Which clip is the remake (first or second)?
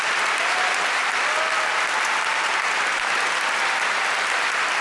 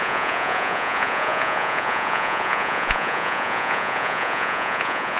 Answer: second